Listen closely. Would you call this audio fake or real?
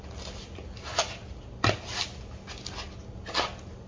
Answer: real